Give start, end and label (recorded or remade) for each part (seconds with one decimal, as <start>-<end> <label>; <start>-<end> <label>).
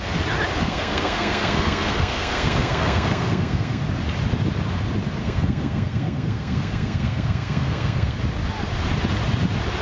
0.0-0.6 recorded; 0.6-3.8 remade; 3.8-5.2 recorded; 5.2-8.2 remade; 8.2-9.8 recorded